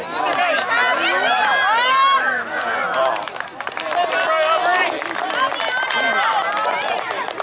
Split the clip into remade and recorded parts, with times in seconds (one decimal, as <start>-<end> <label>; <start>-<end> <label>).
0.0-7.4 recorded